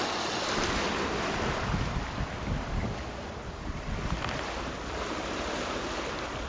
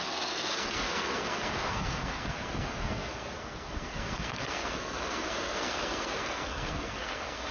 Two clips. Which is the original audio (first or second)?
first